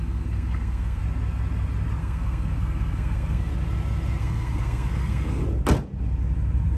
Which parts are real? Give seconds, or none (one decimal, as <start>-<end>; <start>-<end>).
1.0-2.0; 3.5-4.2; 5.4-6.8